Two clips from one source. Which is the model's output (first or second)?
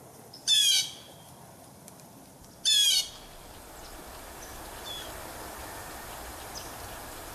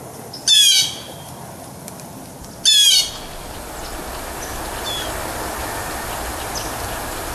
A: first